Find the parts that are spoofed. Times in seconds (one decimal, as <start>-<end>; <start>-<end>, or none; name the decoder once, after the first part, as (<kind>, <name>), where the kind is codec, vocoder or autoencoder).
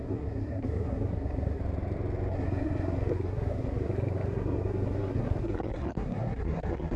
0.0-1.6 (codec, SNAC); 2.3-7.0